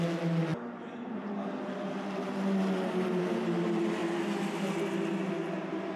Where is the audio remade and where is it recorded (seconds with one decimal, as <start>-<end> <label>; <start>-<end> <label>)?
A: 0.0-6.0 recorded